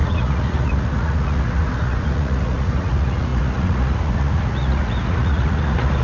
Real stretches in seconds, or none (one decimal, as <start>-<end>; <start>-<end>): none